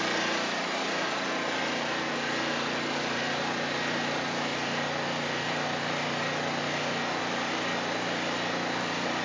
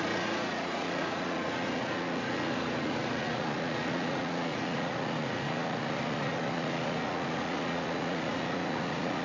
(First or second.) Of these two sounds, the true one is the first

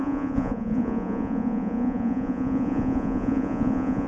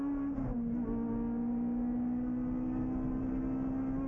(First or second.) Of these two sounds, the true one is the second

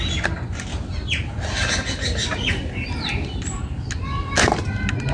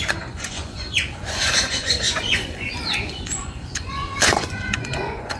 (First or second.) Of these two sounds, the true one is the first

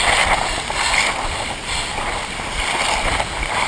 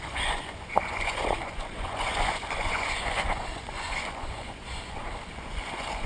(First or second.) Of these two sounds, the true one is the first